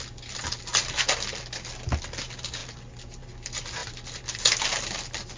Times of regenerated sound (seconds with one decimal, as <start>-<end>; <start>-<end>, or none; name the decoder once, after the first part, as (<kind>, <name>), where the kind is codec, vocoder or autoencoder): none